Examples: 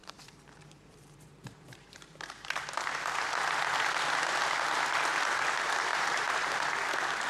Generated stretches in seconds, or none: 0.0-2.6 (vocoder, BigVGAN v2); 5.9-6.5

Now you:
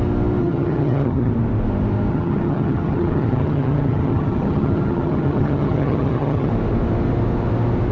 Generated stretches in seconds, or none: 0.4-1.3 (vocoder, HiFi-GAN); 2.1-6.5